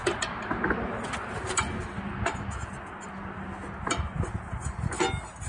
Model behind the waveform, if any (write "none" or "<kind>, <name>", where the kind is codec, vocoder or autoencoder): none